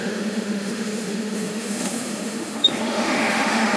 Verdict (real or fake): fake